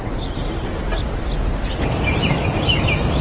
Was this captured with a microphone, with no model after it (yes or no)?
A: yes